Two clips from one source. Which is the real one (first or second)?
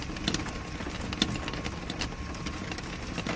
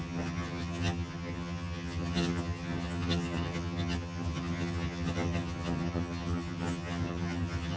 first